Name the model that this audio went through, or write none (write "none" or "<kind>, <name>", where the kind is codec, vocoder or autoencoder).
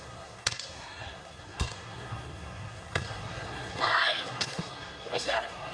codec, SNAC